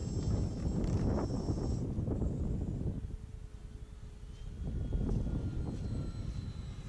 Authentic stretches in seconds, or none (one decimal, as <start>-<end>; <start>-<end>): 0.0-6.9